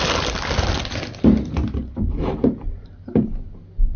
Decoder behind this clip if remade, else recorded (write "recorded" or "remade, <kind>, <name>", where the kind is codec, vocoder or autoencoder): recorded